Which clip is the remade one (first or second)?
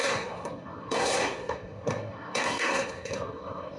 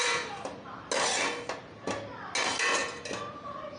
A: first